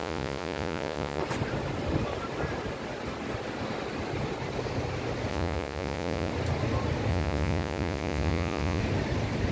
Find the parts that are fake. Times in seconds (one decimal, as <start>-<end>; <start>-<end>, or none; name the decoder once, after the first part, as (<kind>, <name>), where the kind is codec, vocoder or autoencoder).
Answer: 0.0-1.2 (vocoder, Vocos); 5.3-6.3; 7.1-8.8

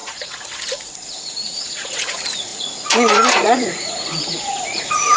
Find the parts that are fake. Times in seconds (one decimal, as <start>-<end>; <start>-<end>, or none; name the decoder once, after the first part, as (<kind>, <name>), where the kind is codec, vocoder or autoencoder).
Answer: 0.0-5.2 (vocoder, Vocos)

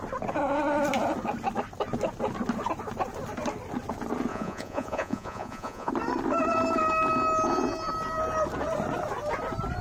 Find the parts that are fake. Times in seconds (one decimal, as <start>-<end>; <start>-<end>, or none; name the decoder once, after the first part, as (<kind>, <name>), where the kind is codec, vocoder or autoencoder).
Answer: 4.3-5.9 (vocoder, Vocos)

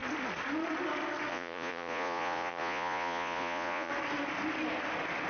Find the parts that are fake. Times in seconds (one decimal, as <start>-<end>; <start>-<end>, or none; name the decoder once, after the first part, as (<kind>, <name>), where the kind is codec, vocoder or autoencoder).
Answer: 1.3-3.9 (vocoder, Vocos)

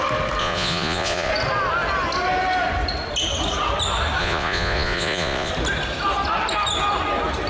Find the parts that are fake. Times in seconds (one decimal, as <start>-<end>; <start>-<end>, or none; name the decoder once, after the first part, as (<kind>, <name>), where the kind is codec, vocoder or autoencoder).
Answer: 0.4-1.3 (vocoder, Vocos); 4.2-5.5

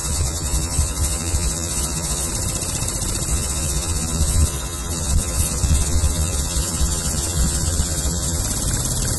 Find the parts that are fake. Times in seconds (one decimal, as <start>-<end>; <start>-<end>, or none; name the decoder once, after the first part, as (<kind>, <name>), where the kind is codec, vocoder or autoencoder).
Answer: 0.0-2.3 (vocoder, Vocos); 3.3-8.4

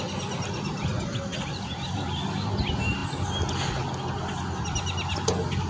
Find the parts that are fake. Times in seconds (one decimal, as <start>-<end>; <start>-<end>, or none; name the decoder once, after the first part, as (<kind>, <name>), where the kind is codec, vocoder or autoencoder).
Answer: none

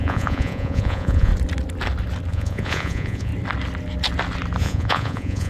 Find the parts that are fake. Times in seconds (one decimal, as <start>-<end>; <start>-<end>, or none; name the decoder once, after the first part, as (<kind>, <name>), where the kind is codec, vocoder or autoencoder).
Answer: 0.0-1.3 (vocoder, Vocos); 2.3-3.3; 4.6-5.5